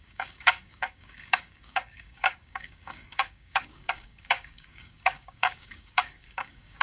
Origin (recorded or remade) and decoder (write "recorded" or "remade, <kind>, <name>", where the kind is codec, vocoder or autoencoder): remade, codec, DAC